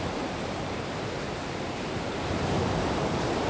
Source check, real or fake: real